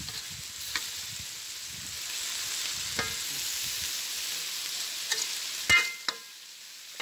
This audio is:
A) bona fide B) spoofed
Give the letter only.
A